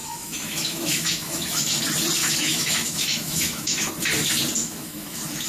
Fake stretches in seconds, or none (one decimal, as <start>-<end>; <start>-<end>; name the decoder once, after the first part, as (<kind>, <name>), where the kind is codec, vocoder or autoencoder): 0.0-1.8 (autoencoder, DAC-VAE); 2.2-3.9; 4.6-5.5